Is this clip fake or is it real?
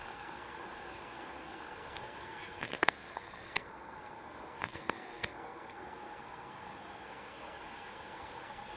fake